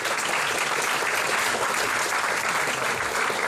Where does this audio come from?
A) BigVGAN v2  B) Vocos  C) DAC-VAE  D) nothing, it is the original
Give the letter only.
A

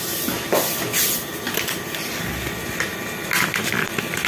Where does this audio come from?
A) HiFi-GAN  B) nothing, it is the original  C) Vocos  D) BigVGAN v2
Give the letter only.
B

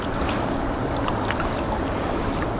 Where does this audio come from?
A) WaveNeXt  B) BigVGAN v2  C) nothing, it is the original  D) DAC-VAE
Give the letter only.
C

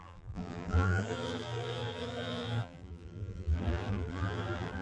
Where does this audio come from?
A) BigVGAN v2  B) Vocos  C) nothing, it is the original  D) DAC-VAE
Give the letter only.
A